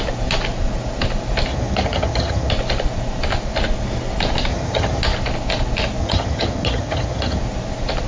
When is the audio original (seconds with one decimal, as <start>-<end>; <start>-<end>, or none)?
0.0-1.5; 2.5-4.5; 5.0-6.0; 7.4-8.1